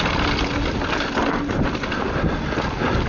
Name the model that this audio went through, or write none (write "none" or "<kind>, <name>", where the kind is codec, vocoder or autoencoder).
none